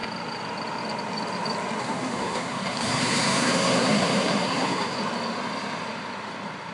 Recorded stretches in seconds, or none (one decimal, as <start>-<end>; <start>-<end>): 0.0-1.8; 5.0-6.7